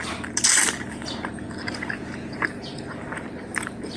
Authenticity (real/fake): real